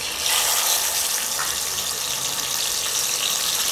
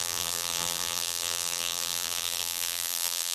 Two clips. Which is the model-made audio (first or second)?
second